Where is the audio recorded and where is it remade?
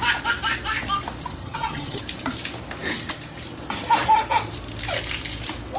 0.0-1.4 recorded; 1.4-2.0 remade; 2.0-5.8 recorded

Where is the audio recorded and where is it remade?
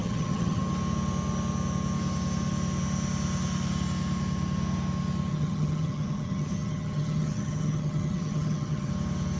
0.0-0.6 remade; 0.6-5.3 recorded; 5.3-8.9 remade; 8.9-9.4 recorded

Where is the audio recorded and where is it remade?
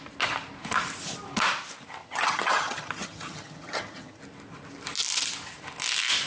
0.0-2.0 recorded; 2.0-4.2 remade; 4.2-6.3 recorded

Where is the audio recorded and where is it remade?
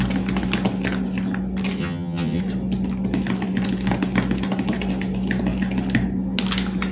0.0-1.8 recorded; 1.8-2.4 remade; 2.4-6.9 recorded